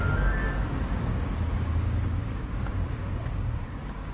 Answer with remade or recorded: remade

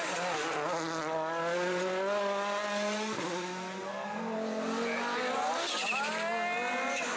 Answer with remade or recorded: recorded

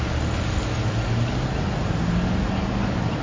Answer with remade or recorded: recorded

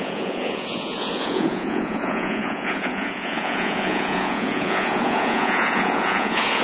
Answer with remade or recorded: remade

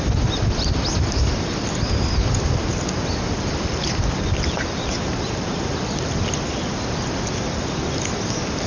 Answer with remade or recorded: recorded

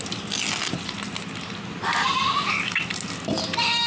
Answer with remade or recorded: recorded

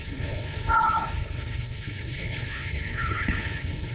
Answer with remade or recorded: remade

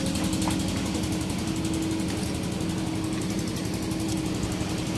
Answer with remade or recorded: recorded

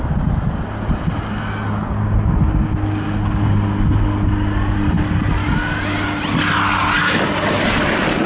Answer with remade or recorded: recorded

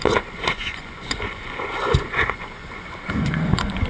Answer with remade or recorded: remade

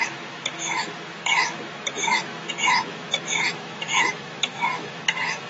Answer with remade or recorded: remade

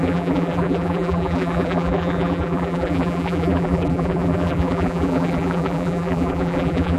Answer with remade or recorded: remade